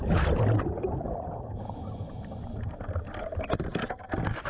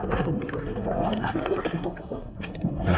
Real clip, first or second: first